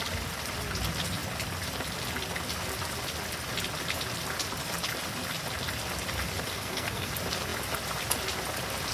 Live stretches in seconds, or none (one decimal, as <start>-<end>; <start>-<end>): 0.0-6.5; 7.1-8.9